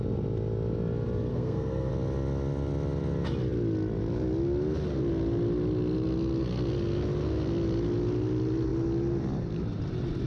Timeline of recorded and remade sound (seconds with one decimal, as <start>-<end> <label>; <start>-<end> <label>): 0.0-1.3 recorded; 1.3-1.9 remade; 1.9-10.3 recorded